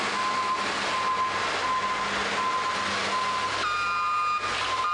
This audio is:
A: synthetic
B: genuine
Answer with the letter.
B